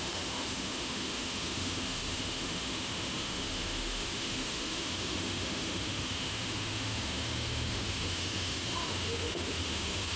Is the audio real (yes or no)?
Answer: no